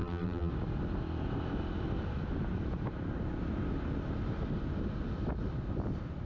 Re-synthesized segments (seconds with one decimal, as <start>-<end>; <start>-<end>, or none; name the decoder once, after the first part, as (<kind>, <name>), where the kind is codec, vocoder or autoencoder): 0.0-0.5 (vocoder, BigVGAN v2)